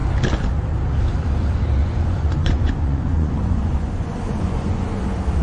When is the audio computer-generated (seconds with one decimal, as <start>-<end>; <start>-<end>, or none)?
1.8-5.0